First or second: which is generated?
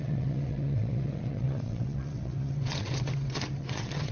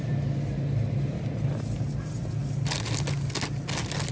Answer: first